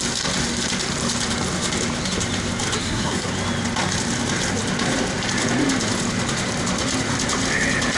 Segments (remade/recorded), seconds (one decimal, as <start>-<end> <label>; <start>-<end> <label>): 0.0-2.8 recorded; 2.8-3.3 remade; 3.3-8.0 recorded